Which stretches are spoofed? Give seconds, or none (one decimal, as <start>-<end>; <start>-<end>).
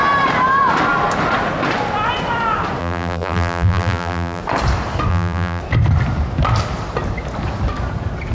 2.8-4.4; 5.1-5.6